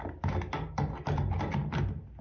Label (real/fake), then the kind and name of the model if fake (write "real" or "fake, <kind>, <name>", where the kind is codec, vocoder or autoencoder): real